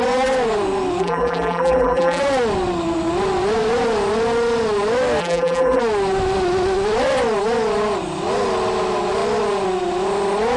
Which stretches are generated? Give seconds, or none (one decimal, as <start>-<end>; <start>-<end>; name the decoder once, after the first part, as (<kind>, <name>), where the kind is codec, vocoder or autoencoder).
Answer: 1.0-2.2 (vocoder, BigVGAN v2); 5.2-5.8